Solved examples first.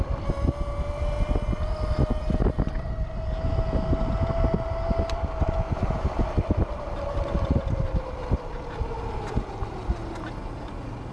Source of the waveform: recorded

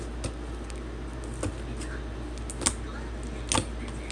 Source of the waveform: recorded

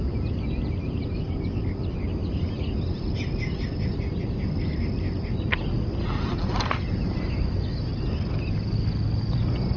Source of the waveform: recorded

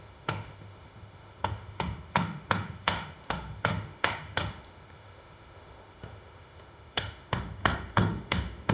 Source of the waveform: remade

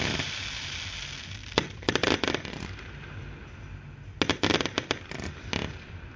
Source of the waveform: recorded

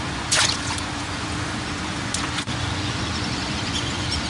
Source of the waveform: remade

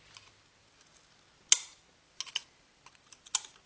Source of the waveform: recorded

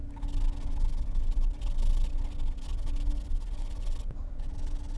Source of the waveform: recorded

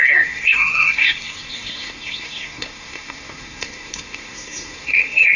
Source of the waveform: remade